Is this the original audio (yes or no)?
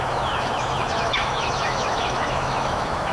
no